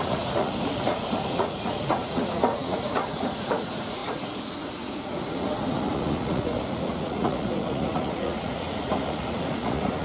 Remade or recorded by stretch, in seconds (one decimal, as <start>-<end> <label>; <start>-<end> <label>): 0.0-10.0 remade